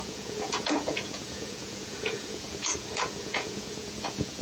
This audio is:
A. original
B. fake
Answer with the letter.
B